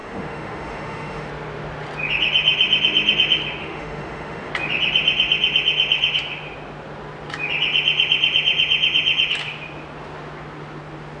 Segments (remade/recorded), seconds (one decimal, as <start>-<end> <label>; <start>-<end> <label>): 0.0-1.3 remade; 1.3-3.6 recorded; 3.6-4.5 remade; 4.5-11.2 recorded